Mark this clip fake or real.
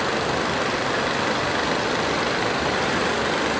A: real